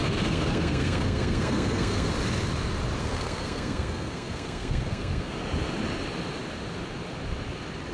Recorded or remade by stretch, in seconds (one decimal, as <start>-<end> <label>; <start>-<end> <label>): 0.0-2.1 remade; 2.1-3.0 recorded; 3.0-5.3 remade; 5.3-7.9 recorded